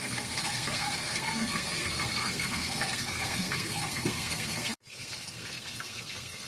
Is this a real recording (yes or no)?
no